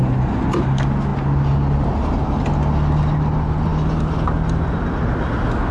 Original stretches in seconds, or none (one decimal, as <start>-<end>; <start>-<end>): 0.0-5.7